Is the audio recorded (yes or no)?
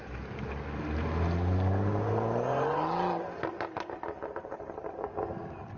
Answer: yes